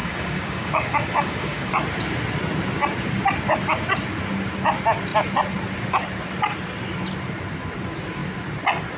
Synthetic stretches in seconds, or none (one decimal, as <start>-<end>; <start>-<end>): 0.0-1.7